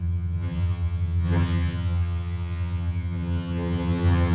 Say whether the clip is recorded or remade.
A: remade